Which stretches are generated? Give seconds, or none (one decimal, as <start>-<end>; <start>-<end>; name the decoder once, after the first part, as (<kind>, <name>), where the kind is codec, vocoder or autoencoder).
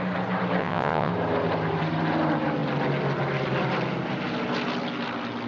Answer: 0.6-1.1 (vocoder, WaveNeXt)